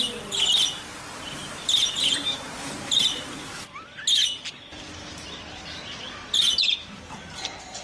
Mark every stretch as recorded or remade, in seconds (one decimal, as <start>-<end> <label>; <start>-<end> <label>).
0.0-7.8 recorded